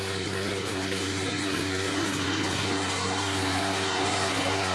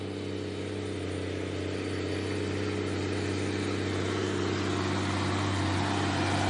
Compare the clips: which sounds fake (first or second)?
first